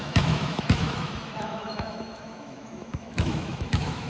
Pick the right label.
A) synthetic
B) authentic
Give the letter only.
A